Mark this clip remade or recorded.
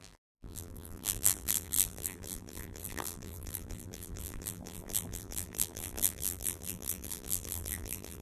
remade